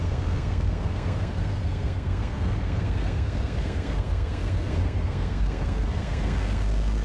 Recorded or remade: remade